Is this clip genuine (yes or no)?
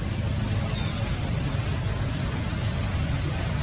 yes